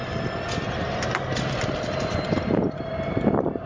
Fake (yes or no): yes